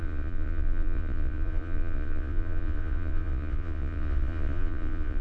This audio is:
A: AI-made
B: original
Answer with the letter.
A